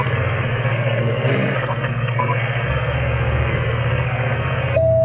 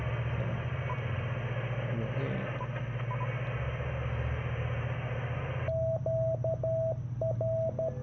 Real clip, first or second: second